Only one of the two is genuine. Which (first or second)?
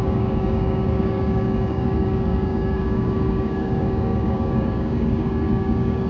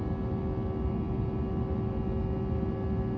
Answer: second